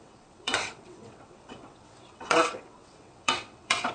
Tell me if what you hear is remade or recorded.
remade